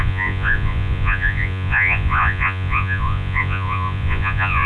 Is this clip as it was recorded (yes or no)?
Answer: no